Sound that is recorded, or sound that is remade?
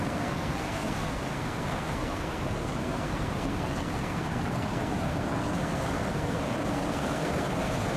remade